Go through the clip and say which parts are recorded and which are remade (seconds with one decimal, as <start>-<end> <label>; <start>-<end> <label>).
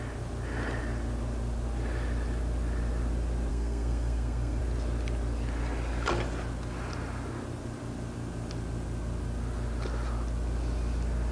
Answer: 0.0-3.5 recorded; 3.5-4.6 remade; 4.6-11.3 recorded